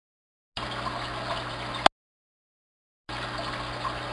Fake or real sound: real